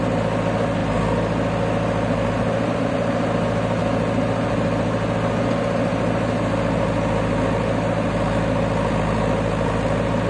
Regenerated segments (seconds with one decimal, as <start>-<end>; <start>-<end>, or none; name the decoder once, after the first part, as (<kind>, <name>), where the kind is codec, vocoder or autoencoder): none